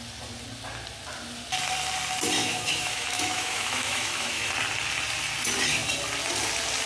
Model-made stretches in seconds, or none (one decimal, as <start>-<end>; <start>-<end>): 2.4-4.5

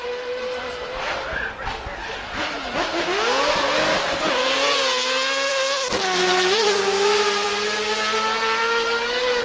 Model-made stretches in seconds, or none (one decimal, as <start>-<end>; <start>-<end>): none